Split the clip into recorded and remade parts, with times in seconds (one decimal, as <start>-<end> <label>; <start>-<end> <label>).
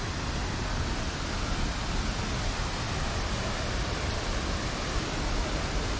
0.0-6.0 recorded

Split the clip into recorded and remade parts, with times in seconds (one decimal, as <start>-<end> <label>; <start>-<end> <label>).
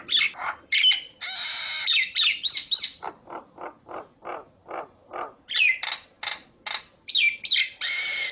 0.0-8.3 recorded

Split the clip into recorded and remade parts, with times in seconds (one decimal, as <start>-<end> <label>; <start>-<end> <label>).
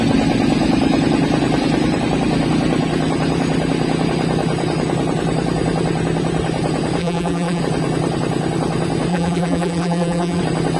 0.0-7.0 recorded; 7.0-7.6 remade; 7.6-9.1 recorded; 9.1-10.4 remade; 10.4-10.8 recorded